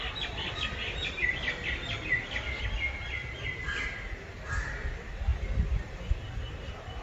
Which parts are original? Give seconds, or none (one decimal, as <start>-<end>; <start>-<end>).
0.0-1.0; 2.6-7.0